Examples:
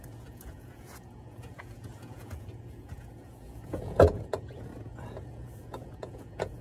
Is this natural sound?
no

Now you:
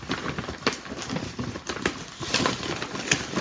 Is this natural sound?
yes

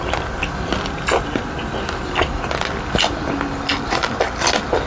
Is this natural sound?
yes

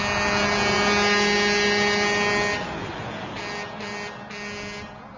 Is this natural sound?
yes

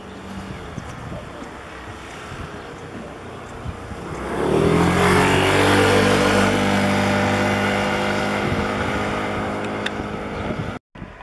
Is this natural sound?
yes